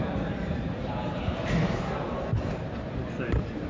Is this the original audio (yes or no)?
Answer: no